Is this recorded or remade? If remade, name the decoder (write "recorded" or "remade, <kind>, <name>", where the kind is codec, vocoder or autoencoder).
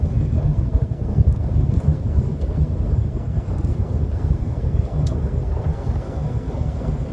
remade, codec, SNAC